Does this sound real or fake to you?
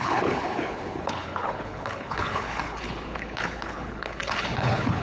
fake